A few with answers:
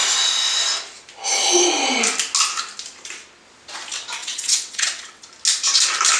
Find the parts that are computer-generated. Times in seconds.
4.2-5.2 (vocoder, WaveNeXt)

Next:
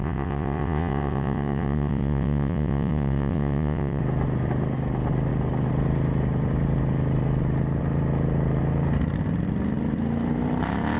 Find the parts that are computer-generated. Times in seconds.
0.0-4.0 (vocoder, WaveNeXt)